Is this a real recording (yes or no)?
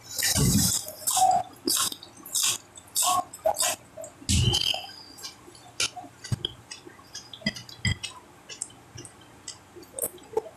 yes